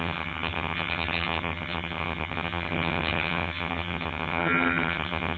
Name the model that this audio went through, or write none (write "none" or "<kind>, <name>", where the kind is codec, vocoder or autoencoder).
vocoder, HiFi-GAN